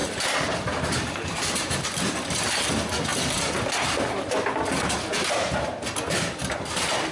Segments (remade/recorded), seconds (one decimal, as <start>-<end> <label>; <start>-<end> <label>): 0.0-2.1 remade; 2.1-7.1 recorded